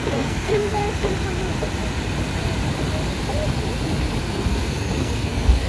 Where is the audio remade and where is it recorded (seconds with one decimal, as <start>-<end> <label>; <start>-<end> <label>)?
0.0-0.8 remade; 0.8-4.2 recorded; 4.2-5.7 remade